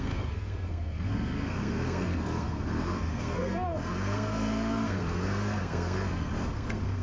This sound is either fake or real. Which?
fake